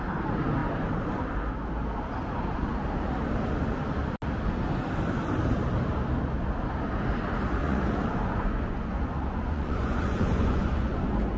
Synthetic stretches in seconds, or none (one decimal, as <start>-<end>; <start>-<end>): 7.6-11.4